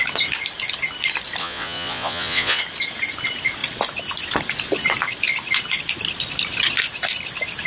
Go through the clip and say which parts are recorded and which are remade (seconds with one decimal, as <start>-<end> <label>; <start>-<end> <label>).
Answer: 0.0-1.4 recorded; 1.4-2.6 remade; 2.6-7.7 recorded